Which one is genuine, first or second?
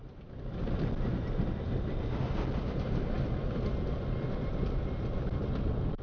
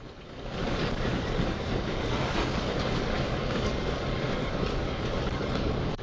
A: first